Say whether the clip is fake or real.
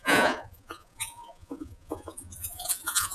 fake